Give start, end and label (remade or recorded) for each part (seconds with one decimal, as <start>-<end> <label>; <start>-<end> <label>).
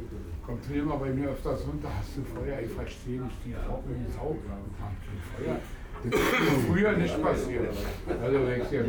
0.0-5.1 recorded; 5.1-6.3 remade; 6.3-8.9 recorded